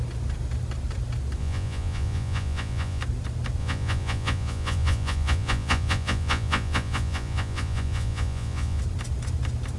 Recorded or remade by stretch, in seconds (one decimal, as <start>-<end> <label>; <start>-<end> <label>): 0.0-1.4 recorded; 1.4-3.0 remade; 3.0-3.6 recorded; 3.6-8.8 remade; 8.8-9.8 recorded